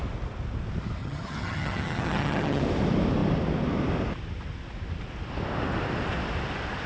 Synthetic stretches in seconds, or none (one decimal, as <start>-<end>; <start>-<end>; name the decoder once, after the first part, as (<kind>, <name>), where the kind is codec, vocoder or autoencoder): 1.0-2.6 (vocoder, HiFi-GAN)